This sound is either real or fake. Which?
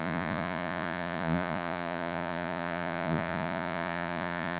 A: fake